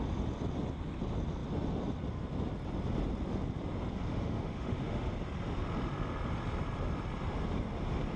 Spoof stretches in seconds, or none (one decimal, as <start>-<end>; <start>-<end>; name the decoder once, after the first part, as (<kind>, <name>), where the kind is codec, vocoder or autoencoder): 4.1-5.1 (autoencoder, DAC-VAE)